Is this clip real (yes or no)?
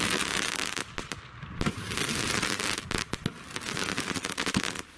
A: yes